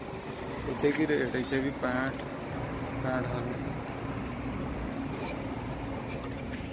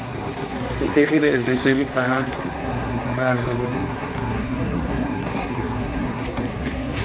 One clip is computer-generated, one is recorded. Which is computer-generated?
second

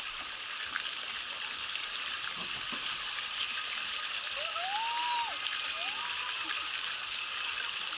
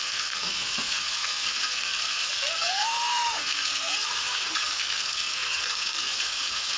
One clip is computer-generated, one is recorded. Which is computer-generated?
second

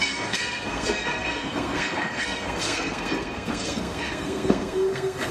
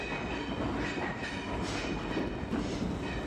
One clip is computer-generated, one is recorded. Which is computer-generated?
first